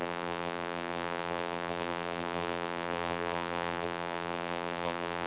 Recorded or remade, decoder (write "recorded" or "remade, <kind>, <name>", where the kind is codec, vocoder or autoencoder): remade, vocoder, BigVGAN v2